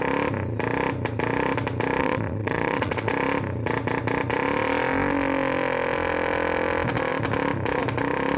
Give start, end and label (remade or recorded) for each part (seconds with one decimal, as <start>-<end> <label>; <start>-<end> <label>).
0.0-2.0 recorded; 2.0-3.1 remade; 3.1-8.4 recorded